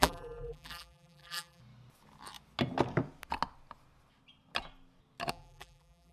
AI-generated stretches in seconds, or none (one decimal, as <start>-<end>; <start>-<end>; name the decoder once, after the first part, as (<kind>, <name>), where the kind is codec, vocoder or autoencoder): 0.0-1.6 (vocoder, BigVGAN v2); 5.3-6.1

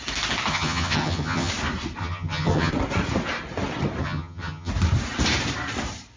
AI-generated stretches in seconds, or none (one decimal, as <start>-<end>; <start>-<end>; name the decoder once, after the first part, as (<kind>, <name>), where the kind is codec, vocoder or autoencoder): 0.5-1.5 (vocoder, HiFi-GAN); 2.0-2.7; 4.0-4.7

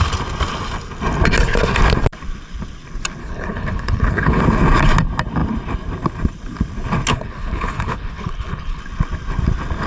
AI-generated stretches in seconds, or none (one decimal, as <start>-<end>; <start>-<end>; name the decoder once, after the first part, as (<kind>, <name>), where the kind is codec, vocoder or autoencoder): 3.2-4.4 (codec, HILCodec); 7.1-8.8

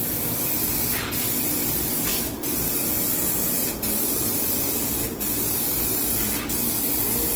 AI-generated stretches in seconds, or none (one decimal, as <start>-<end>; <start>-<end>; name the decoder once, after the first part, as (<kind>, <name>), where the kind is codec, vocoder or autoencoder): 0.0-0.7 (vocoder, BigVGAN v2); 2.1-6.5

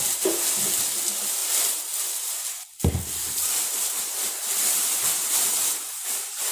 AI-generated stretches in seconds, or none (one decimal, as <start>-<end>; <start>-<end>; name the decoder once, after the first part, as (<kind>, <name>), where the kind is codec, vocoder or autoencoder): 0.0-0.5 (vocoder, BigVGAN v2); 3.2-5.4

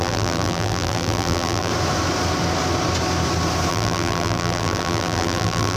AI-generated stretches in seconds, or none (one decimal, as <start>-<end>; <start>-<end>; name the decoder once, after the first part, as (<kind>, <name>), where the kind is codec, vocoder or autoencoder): 0.0-1.7 (vocoder, BigVGAN v2); 3.7-5.8

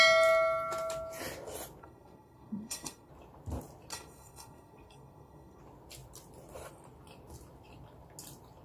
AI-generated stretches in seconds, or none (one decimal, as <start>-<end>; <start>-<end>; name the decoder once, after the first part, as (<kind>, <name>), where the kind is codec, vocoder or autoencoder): 1.8-3.1 (codec, SNAC); 3.9-5.6

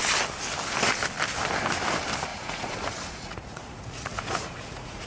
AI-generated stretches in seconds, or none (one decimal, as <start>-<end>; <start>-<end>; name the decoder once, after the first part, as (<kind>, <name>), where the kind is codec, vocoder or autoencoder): 2.3-5.1 (vocoder, Vocos)